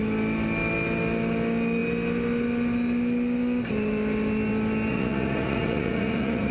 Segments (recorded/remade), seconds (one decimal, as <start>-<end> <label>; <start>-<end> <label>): 0.0-4.9 recorded; 4.9-6.5 remade